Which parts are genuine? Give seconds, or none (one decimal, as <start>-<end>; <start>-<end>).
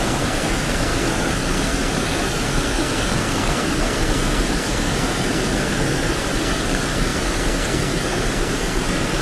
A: none